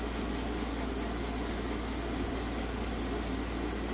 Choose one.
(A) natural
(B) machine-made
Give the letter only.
A